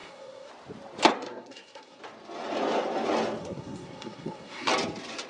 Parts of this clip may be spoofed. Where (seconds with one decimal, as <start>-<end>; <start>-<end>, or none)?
0.0-0.5; 1.1-2.0; 3.4-4.7